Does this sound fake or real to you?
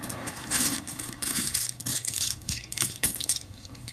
fake